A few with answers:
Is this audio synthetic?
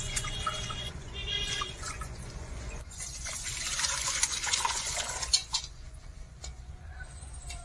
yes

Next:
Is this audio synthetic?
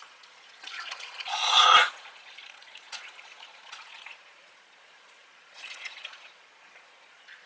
yes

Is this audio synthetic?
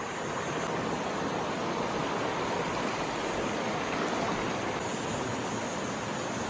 no